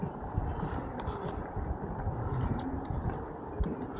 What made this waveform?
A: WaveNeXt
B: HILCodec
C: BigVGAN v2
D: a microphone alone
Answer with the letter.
C